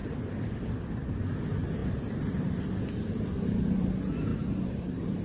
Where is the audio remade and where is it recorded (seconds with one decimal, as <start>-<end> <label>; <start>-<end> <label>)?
0.0-0.7 remade; 0.7-5.2 recorded